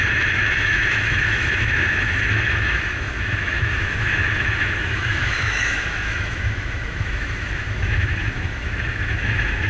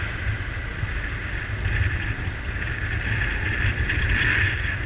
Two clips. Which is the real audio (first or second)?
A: second